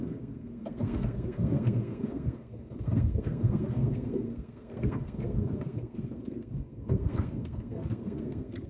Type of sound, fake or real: fake